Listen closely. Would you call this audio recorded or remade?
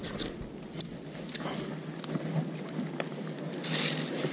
recorded